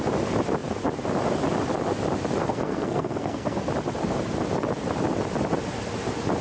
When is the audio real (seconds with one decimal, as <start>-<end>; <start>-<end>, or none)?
0.0-2.4; 3.7-6.4